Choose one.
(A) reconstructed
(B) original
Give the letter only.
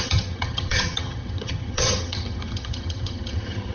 A